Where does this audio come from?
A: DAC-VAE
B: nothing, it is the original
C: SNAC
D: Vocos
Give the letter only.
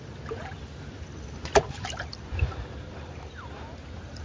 B